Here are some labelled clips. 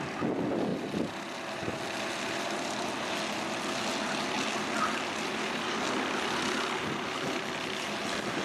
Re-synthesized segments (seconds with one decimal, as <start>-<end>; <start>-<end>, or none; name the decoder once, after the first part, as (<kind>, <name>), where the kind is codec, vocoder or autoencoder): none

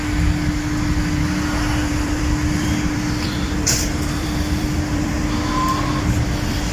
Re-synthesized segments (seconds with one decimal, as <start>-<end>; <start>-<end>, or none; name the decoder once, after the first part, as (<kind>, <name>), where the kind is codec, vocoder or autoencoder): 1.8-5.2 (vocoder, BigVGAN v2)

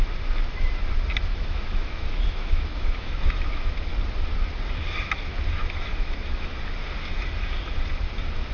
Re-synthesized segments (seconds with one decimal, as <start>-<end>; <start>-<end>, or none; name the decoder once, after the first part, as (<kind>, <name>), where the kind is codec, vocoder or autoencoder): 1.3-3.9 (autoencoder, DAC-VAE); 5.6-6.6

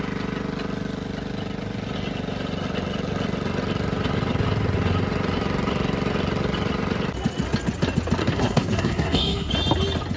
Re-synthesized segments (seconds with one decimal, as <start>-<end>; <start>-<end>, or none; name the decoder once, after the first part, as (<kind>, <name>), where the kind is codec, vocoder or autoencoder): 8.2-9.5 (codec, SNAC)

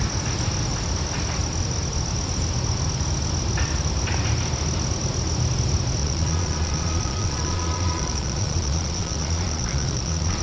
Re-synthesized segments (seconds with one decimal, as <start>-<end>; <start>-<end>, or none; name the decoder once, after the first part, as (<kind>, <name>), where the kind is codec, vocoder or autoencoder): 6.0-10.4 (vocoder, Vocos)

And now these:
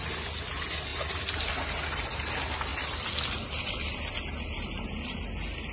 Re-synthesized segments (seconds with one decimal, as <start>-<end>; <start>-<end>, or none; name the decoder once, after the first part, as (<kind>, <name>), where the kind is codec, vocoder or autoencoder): none